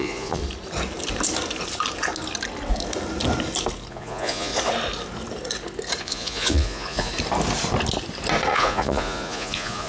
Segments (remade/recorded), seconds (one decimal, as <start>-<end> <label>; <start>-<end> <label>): 0.0-0.4 remade; 0.4-3.9 recorded; 3.9-4.5 remade; 4.5-6.0 recorded; 6.0-7.1 remade; 7.1-8.5 recorded; 8.5-9.9 remade